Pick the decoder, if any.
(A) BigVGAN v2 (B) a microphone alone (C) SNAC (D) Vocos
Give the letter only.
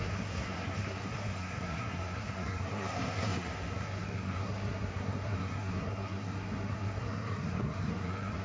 C